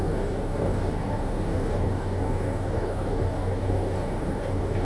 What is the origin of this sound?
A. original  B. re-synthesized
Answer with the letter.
B